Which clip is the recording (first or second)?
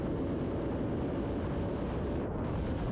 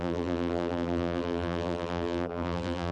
first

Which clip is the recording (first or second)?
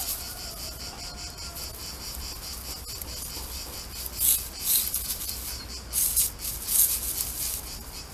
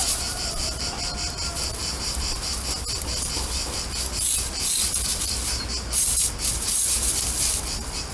first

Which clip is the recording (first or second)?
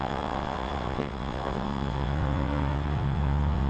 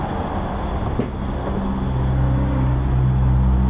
second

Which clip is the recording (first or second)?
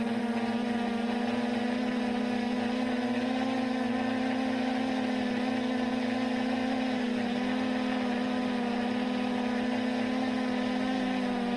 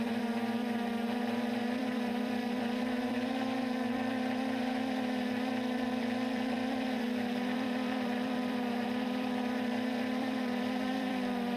first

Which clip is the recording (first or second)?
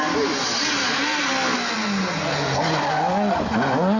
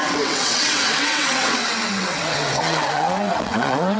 first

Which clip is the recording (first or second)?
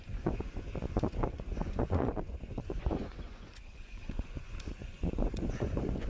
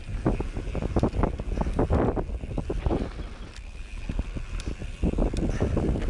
second